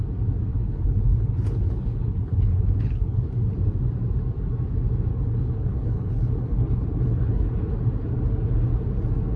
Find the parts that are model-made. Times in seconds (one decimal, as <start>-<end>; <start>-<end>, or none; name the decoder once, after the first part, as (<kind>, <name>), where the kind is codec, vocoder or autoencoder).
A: 0.5-3.3 (codec, HILCodec); 5.1-7.6

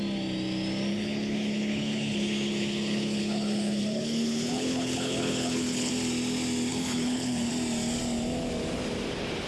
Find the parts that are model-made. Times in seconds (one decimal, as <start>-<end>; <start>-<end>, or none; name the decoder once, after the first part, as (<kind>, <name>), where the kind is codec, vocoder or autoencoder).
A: 0.9-5.9 (codec, HILCodec); 6.7-7.5

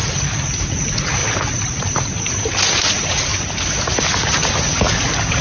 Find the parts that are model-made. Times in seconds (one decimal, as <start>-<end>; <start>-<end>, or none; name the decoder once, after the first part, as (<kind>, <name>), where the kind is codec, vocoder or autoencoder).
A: 0.6-1.2 (vocoder, Vocos); 2.9-3.3